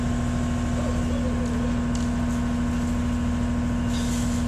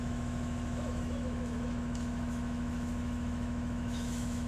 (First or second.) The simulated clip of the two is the second